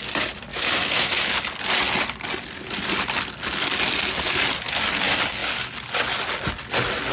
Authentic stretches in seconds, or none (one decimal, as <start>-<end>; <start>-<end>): 0.0-0.5; 1.3-7.1